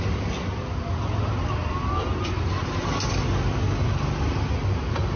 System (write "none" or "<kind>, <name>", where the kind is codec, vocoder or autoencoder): none